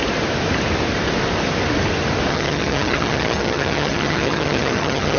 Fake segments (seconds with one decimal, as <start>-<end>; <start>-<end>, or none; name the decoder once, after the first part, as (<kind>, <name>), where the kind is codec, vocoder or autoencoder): 2.3-5.2 (vocoder, HiFi-GAN)